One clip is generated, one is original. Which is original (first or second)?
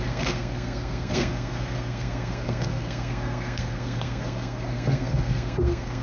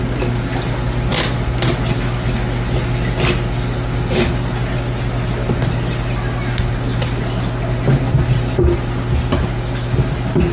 second